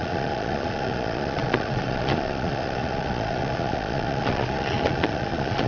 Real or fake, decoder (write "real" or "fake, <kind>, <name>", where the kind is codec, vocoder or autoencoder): fake, vocoder, Vocos